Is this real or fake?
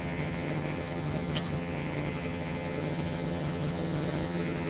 fake